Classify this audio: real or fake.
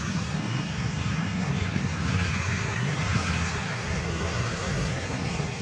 fake